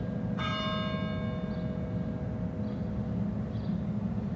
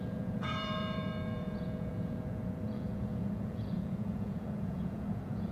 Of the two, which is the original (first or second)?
first